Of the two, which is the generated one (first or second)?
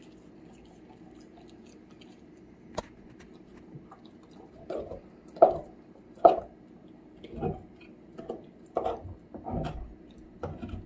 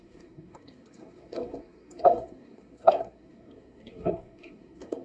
second